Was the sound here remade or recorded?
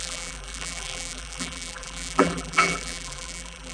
remade